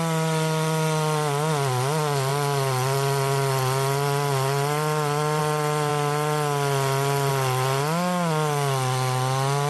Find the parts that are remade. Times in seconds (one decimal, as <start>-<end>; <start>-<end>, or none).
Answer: none